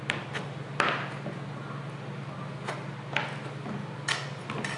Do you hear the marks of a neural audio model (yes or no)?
no